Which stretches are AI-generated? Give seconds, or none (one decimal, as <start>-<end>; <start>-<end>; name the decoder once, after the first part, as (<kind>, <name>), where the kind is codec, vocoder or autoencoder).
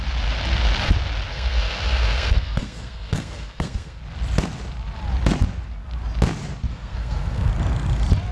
1.3-4.0 (codec, SNAC); 6.7-7.5